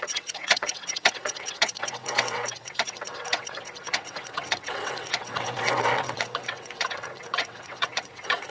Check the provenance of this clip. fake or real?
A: fake